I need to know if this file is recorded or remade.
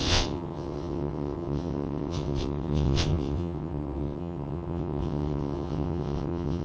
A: remade